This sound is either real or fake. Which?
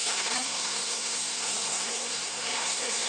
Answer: fake